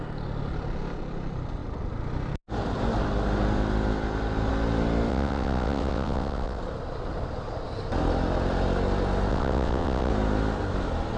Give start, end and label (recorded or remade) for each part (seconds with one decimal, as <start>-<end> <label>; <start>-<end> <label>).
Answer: 0.0-5.1 recorded; 5.1-6.6 remade; 6.6-9.3 recorded; 9.3-10.1 remade; 10.1-11.2 recorded